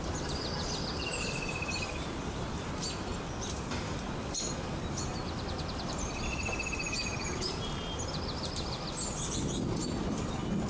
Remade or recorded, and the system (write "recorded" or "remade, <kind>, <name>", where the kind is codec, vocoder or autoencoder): remade, vocoder, BigVGAN v2